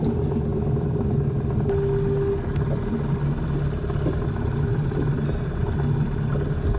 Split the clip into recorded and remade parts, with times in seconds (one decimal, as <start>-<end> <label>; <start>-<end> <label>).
0.0-6.8 recorded